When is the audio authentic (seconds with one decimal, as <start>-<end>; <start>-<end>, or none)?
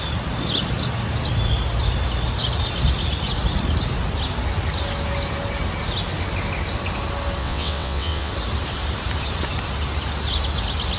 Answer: 0.0-7.4; 8.3-11.0